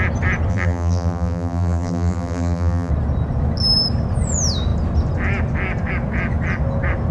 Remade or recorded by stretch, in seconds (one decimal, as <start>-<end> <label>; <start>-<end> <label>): 0.0-0.5 recorded; 0.5-2.9 remade; 2.9-7.1 recorded